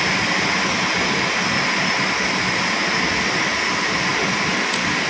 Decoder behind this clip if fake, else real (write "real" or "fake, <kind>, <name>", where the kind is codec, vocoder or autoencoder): real